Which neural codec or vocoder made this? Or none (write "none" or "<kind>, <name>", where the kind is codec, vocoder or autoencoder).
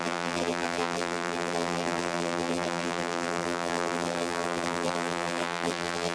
vocoder, BigVGAN v2